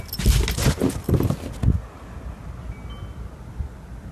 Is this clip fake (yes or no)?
no